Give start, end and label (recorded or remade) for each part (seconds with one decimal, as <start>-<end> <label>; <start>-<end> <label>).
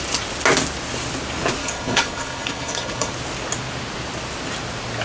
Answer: 0.0-1.6 recorded; 1.6-3.1 remade; 3.1-5.0 recorded